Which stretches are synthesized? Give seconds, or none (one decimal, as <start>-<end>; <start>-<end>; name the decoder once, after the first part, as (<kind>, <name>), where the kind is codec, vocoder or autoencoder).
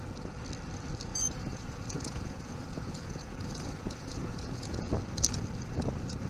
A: 1.1-4.9 (vocoder, Vocos)